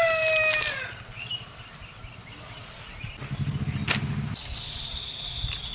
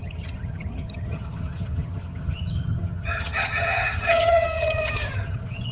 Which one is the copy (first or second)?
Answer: second